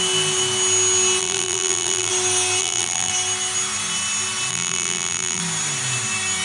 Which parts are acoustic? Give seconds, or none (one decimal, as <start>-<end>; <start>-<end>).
0.0-1.2; 2.1-2.6; 3.1-4.5; 5.4-6.4